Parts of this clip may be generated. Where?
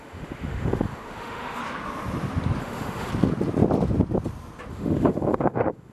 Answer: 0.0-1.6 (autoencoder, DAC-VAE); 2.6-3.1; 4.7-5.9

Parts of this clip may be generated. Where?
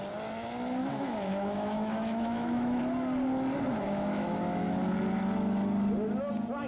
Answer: 0.8-2.8 (autoencoder, DAC-VAE); 3.7-4.8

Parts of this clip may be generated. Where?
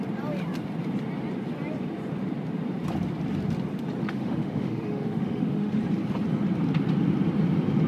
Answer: 4.0-5.8 (autoencoder, DAC-VAE)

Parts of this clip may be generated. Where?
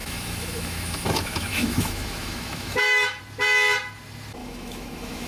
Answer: 0.0-3.2 (autoencoder, DAC-VAE); 4.4-5.3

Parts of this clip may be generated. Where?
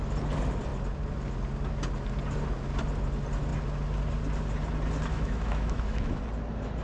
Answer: 5.1-6.2 (autoencoder, DAC-VAE)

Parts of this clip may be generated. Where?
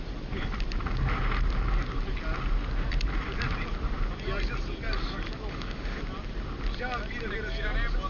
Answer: 5.5-6.0 (autoencoder, DAC-VAE)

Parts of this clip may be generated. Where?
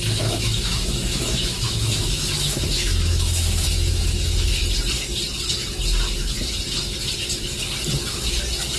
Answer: 0.0-4.6 (autoencoder, DAC-VAE)